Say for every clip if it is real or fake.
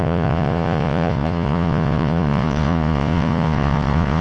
fake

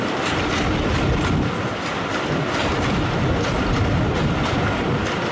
real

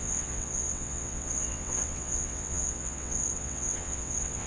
fake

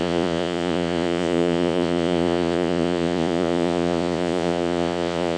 fake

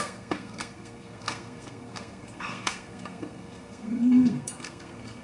fake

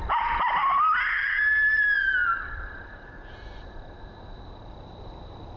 real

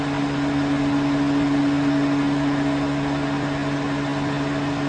real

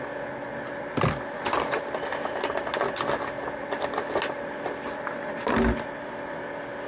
real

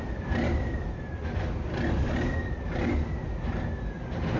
real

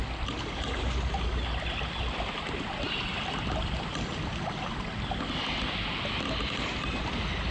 real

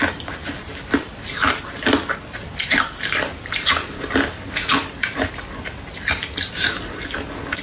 real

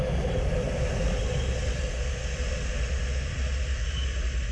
real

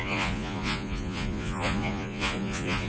fake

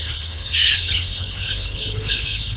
fake